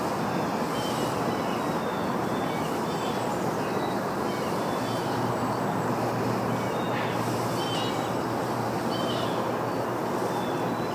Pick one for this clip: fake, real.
real